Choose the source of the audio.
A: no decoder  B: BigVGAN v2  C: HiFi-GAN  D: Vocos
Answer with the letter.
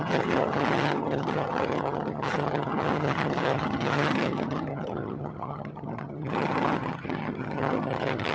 C